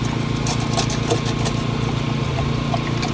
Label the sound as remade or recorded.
recorded